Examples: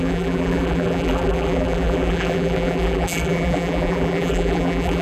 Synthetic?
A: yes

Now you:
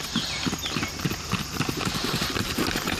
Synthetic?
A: yes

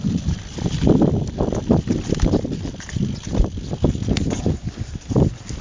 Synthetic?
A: no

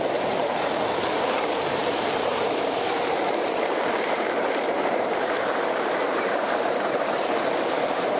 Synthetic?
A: yes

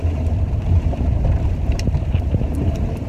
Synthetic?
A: yes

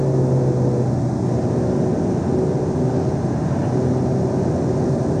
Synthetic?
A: no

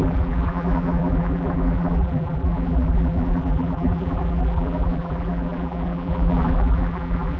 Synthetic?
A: yes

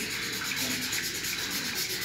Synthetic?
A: no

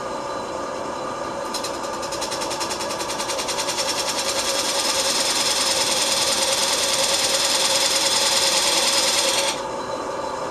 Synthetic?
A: yes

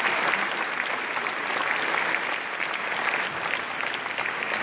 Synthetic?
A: no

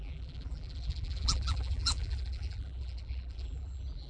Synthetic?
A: yes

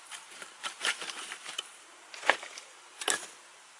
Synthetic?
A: yes